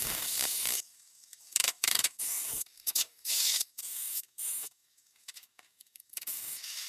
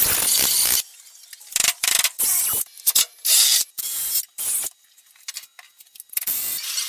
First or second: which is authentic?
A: second